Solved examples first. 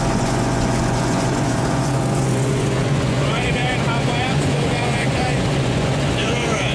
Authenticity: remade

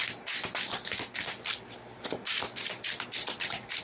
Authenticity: recorded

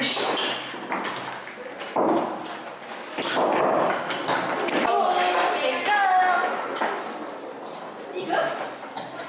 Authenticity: recorded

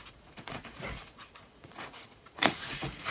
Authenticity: remade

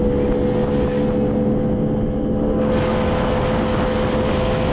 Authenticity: recorded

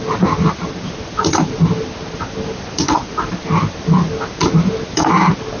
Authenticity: recorded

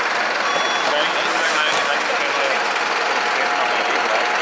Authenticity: recorded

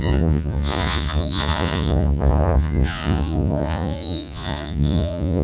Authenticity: remade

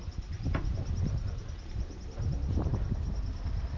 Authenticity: recorded